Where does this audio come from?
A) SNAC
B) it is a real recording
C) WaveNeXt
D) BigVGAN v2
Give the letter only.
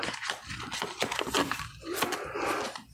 D